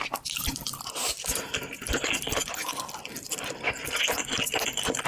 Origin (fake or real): real